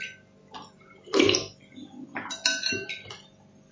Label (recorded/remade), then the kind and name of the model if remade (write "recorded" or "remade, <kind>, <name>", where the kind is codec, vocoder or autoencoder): recorded